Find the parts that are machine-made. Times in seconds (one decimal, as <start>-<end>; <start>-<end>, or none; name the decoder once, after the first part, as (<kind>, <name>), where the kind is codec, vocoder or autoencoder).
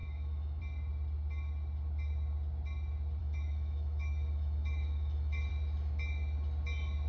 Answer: 0.0-0.6 (autoencoder, DAC-VAE); 3.2-5.5